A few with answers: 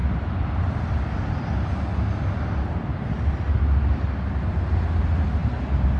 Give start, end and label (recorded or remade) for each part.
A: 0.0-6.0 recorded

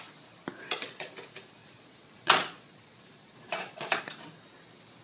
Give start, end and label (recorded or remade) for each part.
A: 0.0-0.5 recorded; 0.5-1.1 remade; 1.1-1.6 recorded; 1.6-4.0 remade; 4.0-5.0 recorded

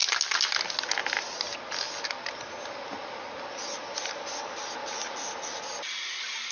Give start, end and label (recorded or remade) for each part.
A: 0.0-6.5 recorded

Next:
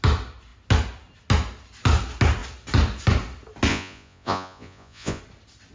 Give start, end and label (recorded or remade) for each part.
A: 0.0-3.7 recorded; 3.7-5.2 remade; 5.2-5.7 recorded

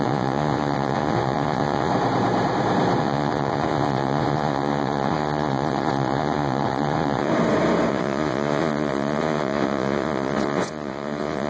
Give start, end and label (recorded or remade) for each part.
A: 0.0-1.9 remade; 1.9-3.0 recorded; 3.0-7.3 remade; 7.3-7.9 recorded; 7.9-11.5 remade

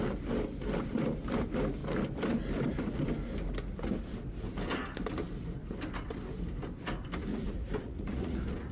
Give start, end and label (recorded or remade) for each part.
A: 0.0-7.3 recorded; 7.3-8.7 remade